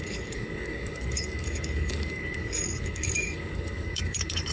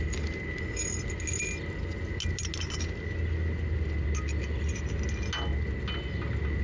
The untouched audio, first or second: second